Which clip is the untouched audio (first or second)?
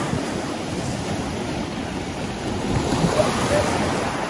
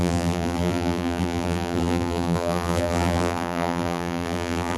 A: first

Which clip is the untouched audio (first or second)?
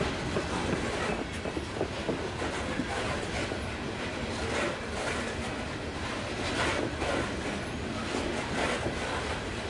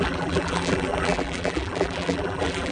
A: first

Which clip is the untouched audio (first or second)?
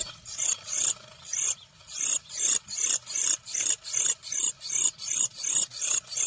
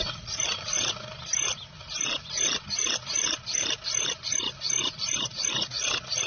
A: second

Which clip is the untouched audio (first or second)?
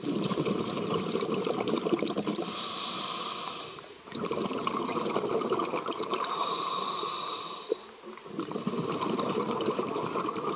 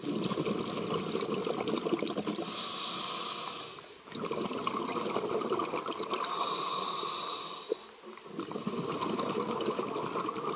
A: second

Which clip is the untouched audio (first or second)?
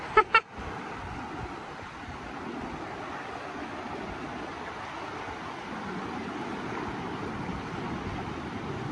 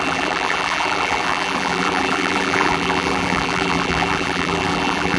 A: first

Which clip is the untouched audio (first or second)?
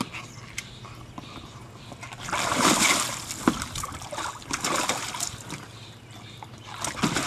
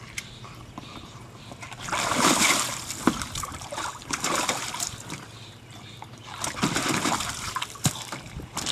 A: first